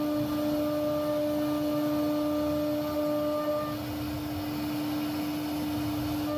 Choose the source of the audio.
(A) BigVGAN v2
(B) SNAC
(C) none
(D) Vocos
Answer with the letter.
C